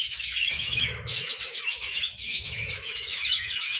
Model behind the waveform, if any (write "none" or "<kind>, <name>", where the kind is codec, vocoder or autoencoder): autoencoder, DAC-VAE